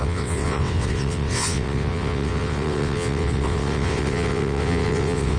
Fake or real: fake